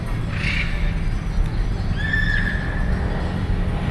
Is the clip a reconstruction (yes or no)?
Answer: no